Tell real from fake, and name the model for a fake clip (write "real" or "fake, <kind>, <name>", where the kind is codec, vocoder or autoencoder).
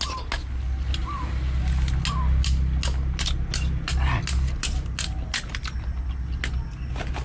real